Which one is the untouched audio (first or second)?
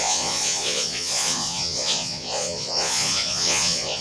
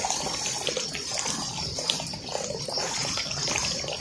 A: second